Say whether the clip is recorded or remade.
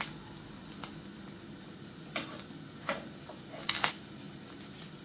recorded